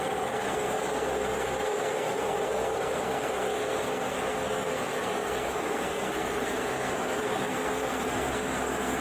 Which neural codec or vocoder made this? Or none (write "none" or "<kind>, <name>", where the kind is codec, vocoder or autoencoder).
codec, SNAC